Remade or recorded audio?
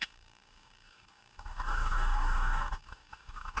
remade